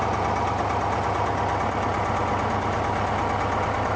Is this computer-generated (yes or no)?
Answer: no